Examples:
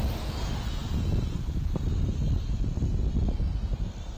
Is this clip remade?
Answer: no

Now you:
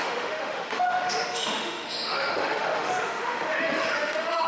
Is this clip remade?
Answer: yes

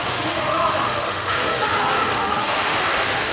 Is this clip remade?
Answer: yes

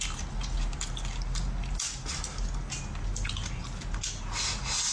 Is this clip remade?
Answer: no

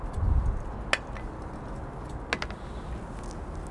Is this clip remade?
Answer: no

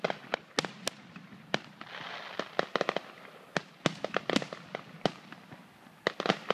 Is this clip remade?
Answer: no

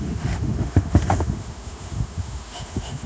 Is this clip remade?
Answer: yes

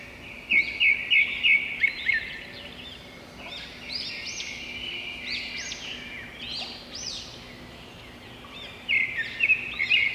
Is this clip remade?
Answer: no